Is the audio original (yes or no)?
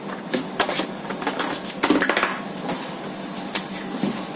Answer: yes